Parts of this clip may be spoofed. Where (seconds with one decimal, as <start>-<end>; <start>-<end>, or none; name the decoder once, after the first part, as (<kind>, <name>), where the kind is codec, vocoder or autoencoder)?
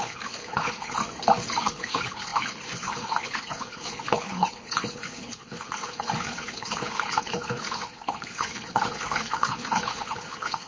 0.0-1.0 (codec, HILCodec); 1.6-10.7